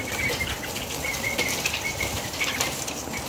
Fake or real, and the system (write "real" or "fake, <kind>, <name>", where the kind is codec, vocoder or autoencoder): real